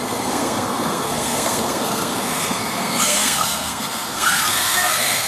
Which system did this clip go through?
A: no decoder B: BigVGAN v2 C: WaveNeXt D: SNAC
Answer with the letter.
D